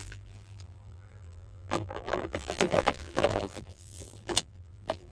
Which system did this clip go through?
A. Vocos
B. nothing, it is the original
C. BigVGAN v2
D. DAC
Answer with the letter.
C